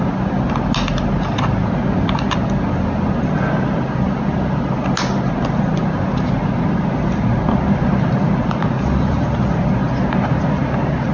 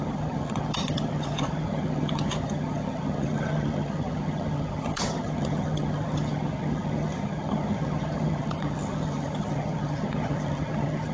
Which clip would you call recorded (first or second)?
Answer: first